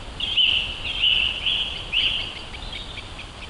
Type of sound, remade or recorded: recorded